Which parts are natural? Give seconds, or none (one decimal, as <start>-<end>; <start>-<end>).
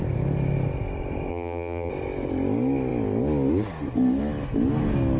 0.0-1.3; 1.9-5.2